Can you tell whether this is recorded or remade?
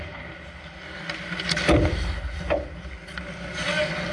recorded